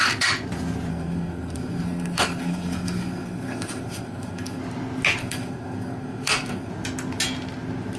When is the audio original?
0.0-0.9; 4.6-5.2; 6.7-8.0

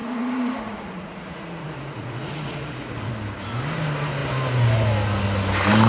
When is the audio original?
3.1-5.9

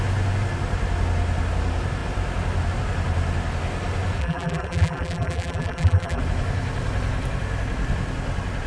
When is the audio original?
0.0-4.2; 6.2-8.7